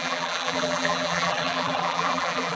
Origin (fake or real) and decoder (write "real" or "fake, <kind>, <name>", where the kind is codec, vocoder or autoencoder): fake, vocoder, BigVGAN v2